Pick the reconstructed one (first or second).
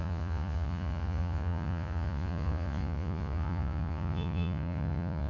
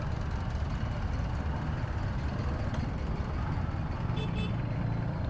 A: first